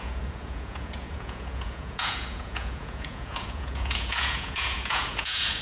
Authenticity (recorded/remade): remade